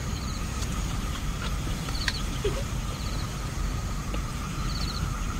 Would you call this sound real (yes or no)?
no